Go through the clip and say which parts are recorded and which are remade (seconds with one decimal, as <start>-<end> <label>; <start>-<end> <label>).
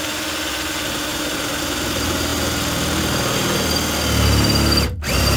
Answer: 0.0-1.1 recorded; 1.1-1.6 remade; 1.6-5.4 recorded